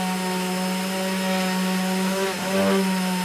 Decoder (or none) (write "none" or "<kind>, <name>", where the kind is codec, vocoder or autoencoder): none